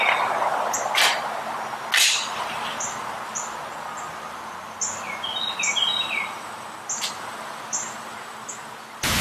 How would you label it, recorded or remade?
recorded